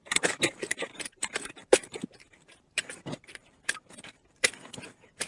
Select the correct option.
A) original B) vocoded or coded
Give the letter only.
B